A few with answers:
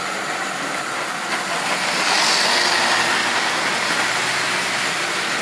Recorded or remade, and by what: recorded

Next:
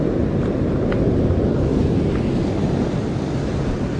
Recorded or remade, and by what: recorded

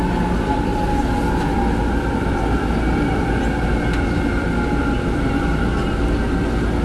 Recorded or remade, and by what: recorded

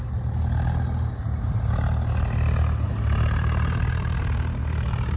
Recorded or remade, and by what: recorded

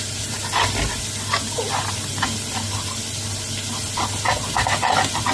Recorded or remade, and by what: recorded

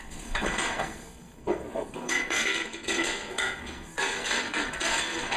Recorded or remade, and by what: remade, codec, SNAC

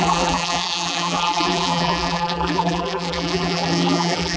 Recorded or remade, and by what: remade, vocoder, BigVGAN v2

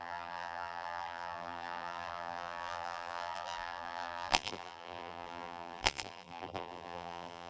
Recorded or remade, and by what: remade, vocoder, BigVGAN v2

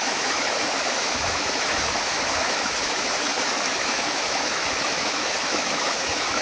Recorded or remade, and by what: remade, autoencoder, DAC-VAE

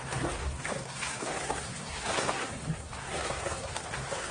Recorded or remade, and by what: remade, codec, SNAC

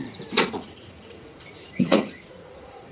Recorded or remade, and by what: remade, vocoder, Vocos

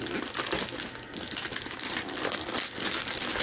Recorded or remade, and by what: recorded